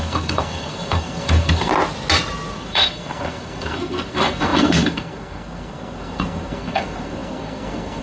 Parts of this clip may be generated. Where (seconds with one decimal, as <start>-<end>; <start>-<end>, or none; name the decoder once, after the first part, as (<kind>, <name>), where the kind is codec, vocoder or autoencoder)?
0.0-1.7 (codec, SNAC); 2.5-8.0